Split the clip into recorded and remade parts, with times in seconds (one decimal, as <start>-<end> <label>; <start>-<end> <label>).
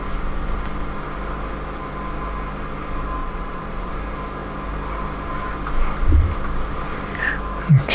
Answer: 0.0-3.2 recorded; 3.2-3.9 remade; 3.9-7.9 recorded